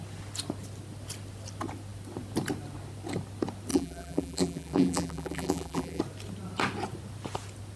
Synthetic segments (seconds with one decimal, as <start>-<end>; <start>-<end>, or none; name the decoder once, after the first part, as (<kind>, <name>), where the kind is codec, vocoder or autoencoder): 3.7-6.0 (vocoder, BigVGAN v2)